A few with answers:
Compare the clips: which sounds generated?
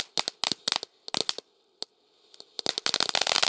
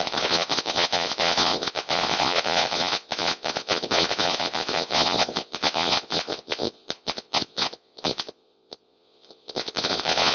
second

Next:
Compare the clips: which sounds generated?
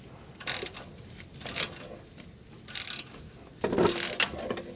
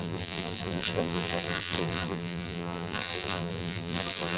second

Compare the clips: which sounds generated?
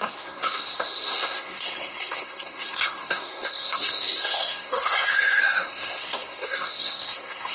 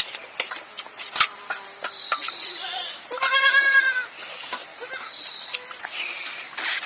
first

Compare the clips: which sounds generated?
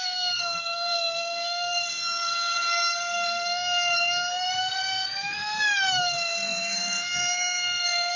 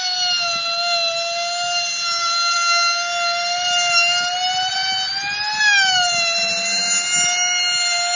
first